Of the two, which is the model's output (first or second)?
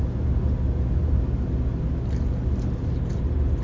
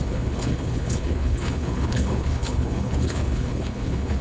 second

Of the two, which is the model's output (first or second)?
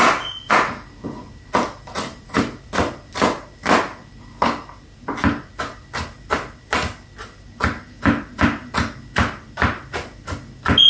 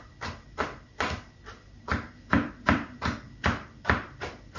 second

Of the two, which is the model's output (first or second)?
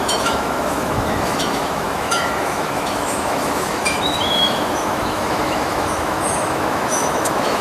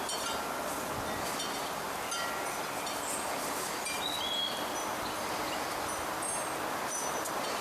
first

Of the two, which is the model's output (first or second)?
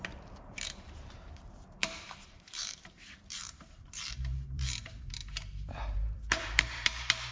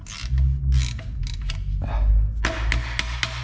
first